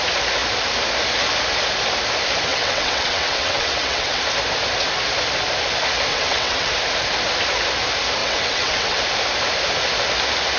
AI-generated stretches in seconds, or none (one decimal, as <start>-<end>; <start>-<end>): 2.5-4.2; 6.1-6.7; 8.2-9.0